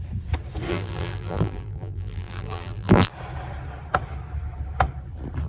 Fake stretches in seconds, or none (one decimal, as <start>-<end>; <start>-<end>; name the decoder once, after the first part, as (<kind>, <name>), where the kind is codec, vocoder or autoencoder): 0.7-3.1 (vocoder, BigVGAN v2)